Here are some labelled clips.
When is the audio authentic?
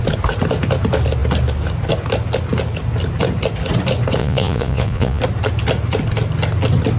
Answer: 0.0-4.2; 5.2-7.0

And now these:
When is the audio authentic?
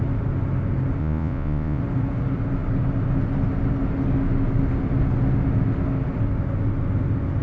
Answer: 0.0-1.0; 1.8-7.4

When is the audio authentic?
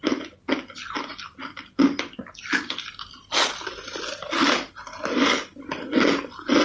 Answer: 0.0-6.6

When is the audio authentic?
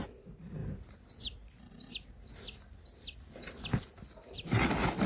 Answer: 0.0-5.1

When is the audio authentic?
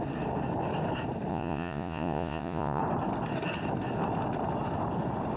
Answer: 0.0-1.3; 2.8-5.4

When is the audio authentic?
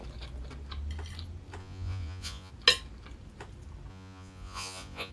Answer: 0.0-1.6; 2.5-3.9